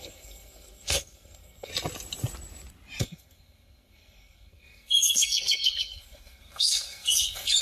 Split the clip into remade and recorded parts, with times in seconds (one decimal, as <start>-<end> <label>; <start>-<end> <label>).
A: 0.0-1.7 remade; 1.7-3.0 recorded; 3.0-7.6 remade